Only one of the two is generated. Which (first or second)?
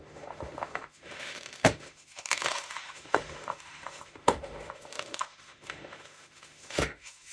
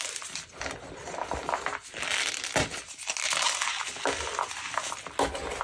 first